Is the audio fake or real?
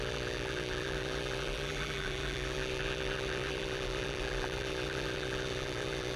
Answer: fake